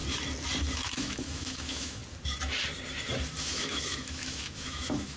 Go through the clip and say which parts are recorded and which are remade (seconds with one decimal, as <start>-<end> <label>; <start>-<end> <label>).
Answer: 0.0-0.8 recorded; 0.8-2.0 remade; 2.0-3.4 recorded; 3.4-5.2 remade